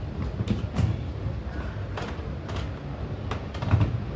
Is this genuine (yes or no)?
yes